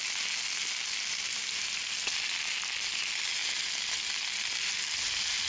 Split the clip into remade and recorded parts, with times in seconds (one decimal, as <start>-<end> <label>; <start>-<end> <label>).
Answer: 0.0-5.5 recorded